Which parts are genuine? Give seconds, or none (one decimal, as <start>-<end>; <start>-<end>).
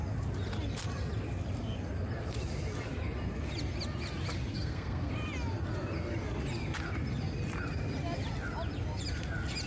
0.0-4.5; 5.1-9.7